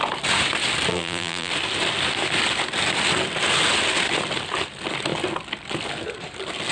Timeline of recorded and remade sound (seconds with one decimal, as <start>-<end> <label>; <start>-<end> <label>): 0.0-0.9 recorded; 0.9-1.5 remade; 1.5-6.7 recorded